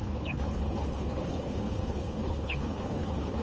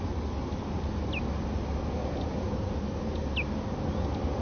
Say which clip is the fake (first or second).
first